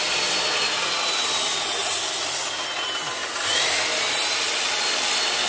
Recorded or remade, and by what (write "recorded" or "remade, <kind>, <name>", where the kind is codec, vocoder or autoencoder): recorded